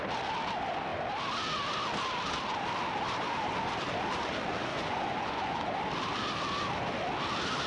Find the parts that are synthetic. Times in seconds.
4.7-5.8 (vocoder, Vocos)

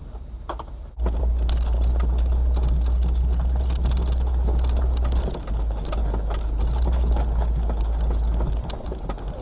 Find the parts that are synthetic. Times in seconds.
none

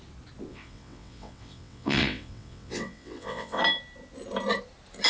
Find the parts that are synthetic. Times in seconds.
0.5-3.6 (vocoder, WaveNeXt)

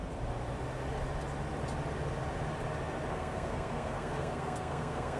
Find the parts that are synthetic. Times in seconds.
3.1-5.2 (codec, SNAC)